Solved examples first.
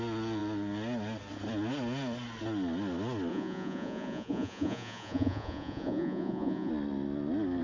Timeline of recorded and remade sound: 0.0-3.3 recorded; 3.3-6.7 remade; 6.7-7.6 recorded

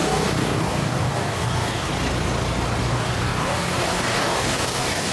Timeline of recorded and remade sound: 0.0-1.9 remade; 1.9-2.8 recorded; 2.8-5.1 remade

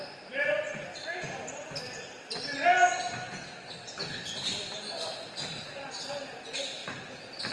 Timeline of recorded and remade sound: 0.0-4.0 recorded; 4.0-5.3 remade; 5.3-6.8 recorded; 6.8-7.5 remade

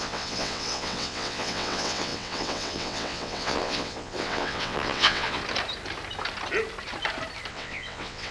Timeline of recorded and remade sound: 0.0-5.4 remade; 5.4-7.5 recorded; 7.5-8.3 remade

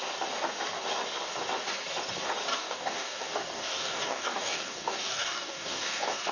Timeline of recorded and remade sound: 0.0-2.5 recorded; 2.5-6.3 remade

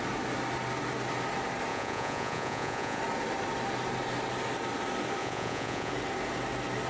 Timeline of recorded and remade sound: 0.0-1.7 recorded; 1.7-3.0 remade; 3.0-5.2 recorded; 5.2-5.9 remade; 5.9-6.9 recorded